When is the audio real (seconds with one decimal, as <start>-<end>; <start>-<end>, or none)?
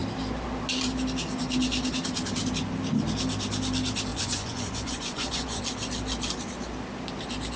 0.0-4.1; 5.6-7.6